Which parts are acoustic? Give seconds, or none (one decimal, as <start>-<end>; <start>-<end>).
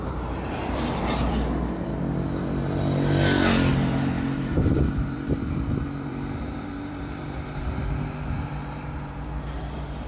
1.9-3.7